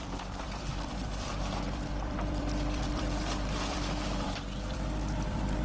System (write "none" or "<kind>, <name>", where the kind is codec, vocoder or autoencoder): vocoder, BigVGAN v2